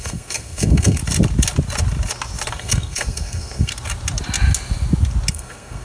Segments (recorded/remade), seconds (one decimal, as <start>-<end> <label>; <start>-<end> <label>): 0.0-1.0 remade; 1.0-2.5 recorded; 2.5-3.7 remade; 3.7-5.3 recorded; 5.3-5.8 remade